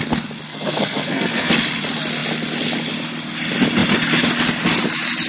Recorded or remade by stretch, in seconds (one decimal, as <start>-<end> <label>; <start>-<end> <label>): 0.0-0.5 recorded; 0.5-1.5 remade; 1.5-5.3 recorded